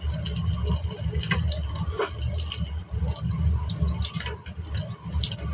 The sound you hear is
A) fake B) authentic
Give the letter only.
B